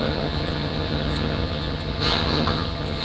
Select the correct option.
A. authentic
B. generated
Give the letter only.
B